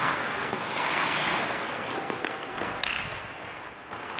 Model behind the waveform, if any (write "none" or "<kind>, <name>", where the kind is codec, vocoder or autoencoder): codec, SNAC